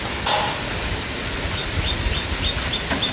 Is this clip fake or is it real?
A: real